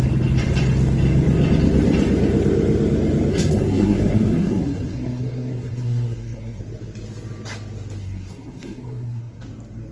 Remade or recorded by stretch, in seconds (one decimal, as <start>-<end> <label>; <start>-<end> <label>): 0.0-3.3 recorded; 3.3-6.6 remade; 6.6-8.0 recorded; 8.0-9.4 remade; 9.4-9.9 recorded